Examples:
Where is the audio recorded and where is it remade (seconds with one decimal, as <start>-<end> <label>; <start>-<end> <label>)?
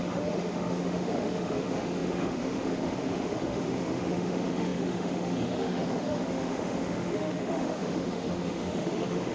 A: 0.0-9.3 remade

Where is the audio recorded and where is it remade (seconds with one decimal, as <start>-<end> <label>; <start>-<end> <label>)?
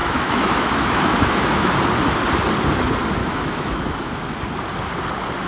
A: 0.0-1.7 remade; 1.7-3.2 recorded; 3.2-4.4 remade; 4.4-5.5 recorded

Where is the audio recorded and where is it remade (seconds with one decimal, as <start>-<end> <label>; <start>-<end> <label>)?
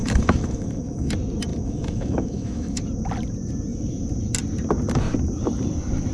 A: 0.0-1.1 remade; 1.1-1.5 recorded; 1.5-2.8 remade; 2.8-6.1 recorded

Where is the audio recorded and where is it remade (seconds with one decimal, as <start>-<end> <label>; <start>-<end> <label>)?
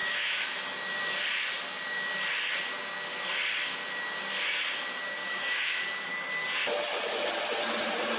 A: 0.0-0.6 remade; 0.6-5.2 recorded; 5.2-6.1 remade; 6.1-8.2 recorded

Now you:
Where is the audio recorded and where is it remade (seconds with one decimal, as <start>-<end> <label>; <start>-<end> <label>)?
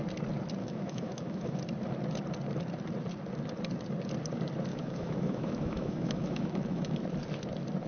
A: 0.0-0.6 recorded; 0.6-1.6 remade; 1.6-4.7 recorded; 4.7-6.9 remade; 6.9-7.9 recorded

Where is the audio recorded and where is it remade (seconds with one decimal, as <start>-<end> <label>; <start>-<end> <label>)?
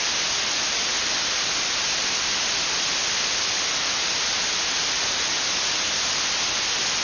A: 0.0-7.0 recorded